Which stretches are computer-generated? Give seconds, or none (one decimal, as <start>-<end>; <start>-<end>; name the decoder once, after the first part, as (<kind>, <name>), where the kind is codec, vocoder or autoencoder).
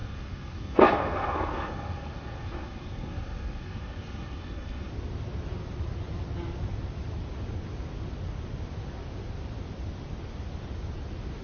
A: 0.0-4.9 (codec, SNAC)